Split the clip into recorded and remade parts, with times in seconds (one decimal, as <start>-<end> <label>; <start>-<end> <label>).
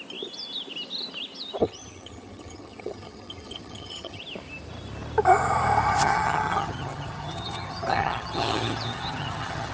0.0-1.6 recorded; 1.6-4.2 remade; 4.2-6.0 recorded; 6.0-9.7 remade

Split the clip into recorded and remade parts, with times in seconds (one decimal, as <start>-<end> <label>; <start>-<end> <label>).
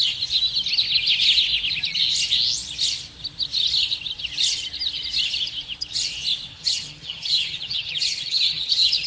0.0-6.5 recorded; 6.5-9.1 remade